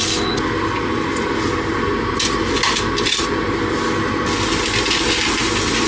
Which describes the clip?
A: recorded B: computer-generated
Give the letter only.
A